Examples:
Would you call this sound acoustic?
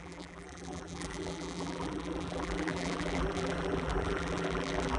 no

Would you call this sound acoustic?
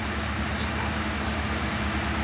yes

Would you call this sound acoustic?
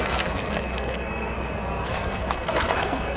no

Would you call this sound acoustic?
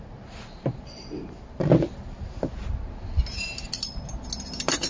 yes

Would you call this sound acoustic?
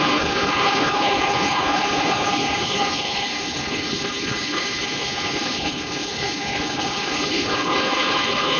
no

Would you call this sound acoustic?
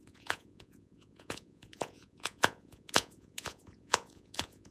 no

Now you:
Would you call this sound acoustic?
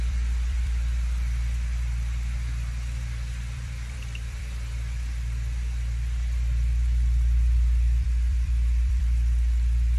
no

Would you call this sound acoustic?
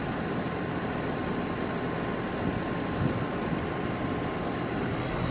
no